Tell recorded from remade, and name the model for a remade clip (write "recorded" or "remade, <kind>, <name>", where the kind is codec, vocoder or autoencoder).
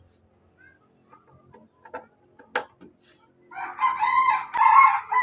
recorded